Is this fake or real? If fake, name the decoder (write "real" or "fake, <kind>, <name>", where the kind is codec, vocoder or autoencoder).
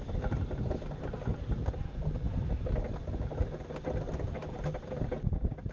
real